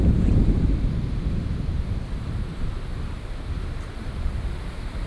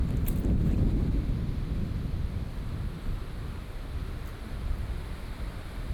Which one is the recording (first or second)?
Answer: second